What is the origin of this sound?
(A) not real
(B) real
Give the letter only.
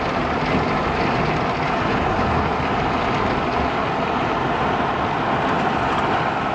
B